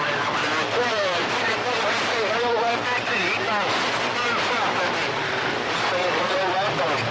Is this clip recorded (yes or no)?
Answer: no